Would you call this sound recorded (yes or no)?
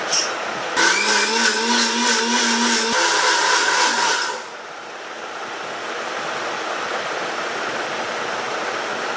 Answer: yes